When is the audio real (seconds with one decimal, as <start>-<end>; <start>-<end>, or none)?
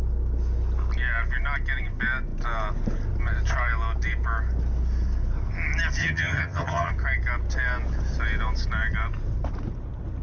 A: 0.0-6.0; 6.9-10.2